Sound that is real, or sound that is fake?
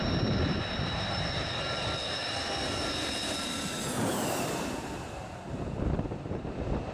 fake